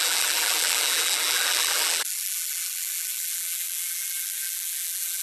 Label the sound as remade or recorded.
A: remade